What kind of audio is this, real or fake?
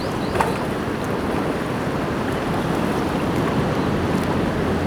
real